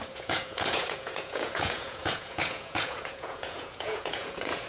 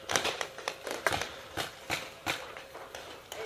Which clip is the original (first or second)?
second